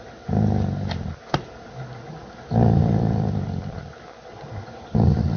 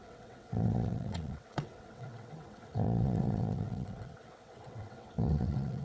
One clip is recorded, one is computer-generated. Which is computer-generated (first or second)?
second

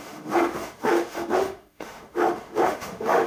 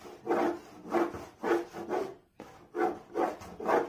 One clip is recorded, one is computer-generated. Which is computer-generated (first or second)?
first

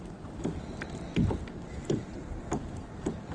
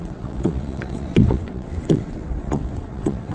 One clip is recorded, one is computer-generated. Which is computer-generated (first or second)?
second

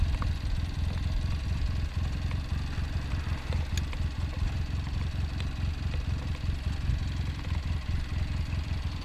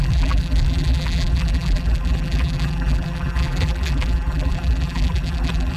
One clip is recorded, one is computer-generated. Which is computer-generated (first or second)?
second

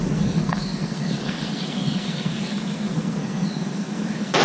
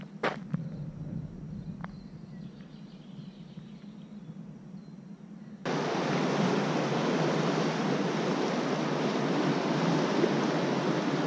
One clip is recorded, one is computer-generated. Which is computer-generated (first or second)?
first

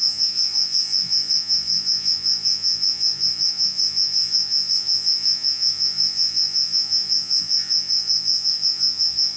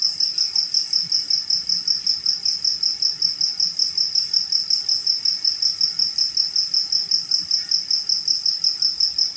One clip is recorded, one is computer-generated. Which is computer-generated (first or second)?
first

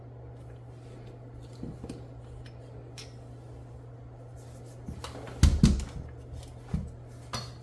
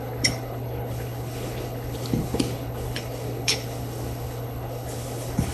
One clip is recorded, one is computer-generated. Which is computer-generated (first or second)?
second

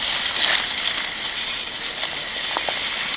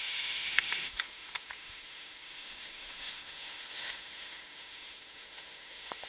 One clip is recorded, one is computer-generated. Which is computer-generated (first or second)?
second